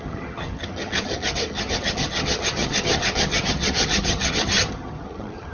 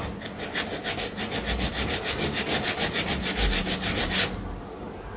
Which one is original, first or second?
second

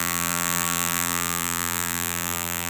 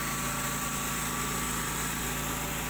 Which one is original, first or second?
second